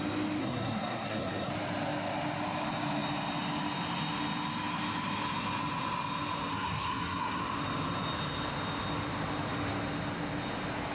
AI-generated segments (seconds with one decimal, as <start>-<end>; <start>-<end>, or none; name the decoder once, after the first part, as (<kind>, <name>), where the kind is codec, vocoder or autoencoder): 0.4-1.5 (codec, SNAC); 6.5-7.4